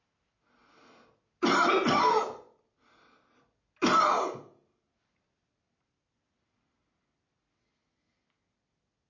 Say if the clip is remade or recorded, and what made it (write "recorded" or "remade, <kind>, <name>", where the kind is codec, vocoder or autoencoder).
recorded